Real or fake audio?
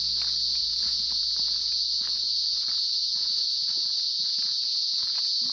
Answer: fake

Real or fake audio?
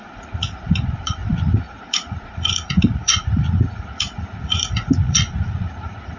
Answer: fake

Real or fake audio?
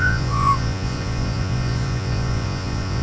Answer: fake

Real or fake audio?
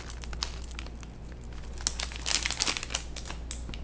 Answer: real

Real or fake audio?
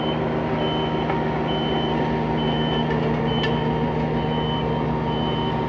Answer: real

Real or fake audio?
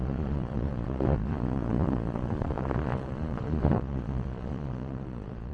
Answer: fake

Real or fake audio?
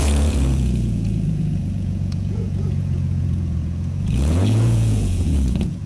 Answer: fake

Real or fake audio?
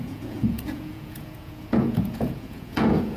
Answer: fake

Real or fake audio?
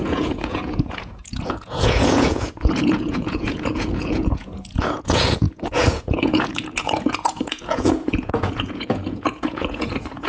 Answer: fake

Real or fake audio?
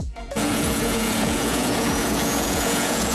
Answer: fake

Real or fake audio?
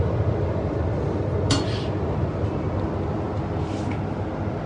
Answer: real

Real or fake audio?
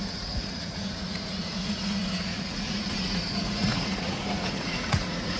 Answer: fake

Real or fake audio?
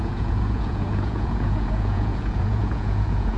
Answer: fake